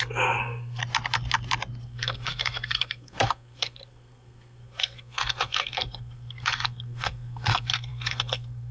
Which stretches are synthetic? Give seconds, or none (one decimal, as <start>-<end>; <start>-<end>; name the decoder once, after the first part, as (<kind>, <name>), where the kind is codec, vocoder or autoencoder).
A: 0.0-0.8 (codec, SNAC); 1.8-8.7